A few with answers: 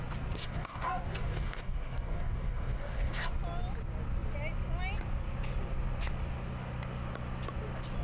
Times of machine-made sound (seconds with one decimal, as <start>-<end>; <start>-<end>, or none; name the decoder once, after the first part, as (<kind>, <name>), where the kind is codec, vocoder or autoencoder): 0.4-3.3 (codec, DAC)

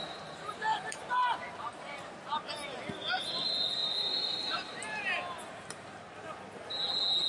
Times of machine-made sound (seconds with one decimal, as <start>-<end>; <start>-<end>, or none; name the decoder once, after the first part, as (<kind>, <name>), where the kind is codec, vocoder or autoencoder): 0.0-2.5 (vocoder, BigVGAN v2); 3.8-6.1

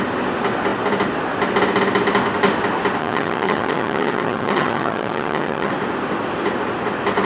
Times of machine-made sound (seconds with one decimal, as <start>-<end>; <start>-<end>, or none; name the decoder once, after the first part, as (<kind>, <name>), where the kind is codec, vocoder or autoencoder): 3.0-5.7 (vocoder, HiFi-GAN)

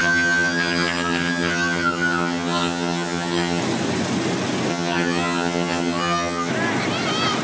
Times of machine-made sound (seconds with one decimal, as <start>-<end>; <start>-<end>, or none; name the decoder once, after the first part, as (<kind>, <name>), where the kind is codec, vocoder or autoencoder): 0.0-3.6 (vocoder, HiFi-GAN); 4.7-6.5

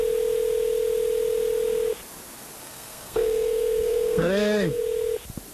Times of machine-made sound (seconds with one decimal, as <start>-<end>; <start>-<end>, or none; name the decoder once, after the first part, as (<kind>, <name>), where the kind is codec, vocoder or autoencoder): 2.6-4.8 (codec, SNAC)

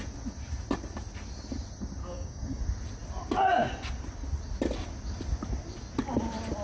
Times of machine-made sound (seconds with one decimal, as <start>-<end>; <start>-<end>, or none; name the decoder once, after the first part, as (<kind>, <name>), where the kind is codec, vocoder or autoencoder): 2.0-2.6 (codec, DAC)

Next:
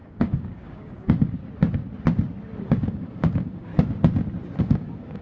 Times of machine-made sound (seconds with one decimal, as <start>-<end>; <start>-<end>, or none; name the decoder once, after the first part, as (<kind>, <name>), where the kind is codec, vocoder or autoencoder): 0.0-1.4 (codec, DAC); 2.6-3.7; 4.6-5.2